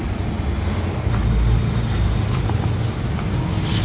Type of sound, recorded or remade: recorded